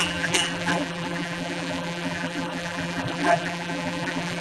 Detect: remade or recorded remade